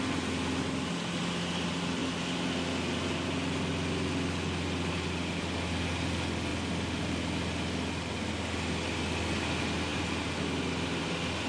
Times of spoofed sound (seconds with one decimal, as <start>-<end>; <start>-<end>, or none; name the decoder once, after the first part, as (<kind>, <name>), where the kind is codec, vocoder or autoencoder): none